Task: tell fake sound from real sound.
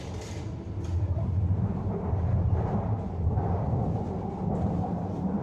real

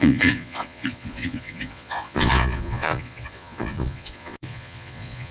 fake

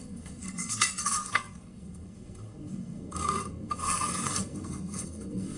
fake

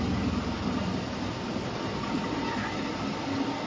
real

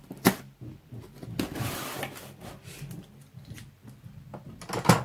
real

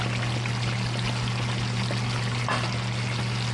real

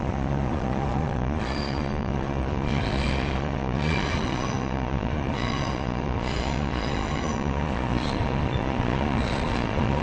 fake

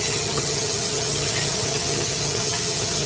fake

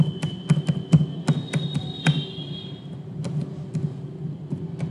real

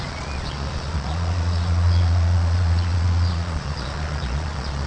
fake